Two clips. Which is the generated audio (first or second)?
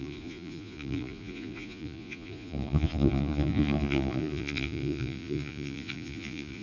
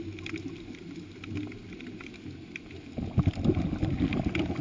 first